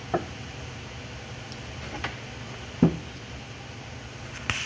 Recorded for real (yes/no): yes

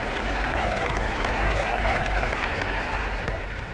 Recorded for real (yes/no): no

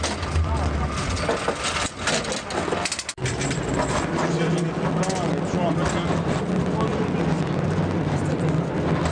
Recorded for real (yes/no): yes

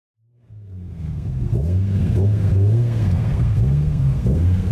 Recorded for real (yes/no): no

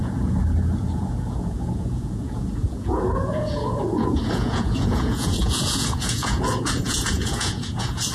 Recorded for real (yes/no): no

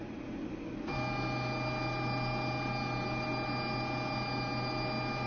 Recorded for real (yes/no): yes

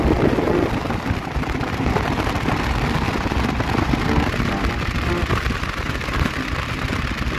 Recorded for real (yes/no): yes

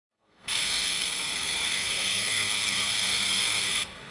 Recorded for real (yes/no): no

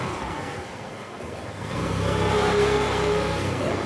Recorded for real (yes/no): no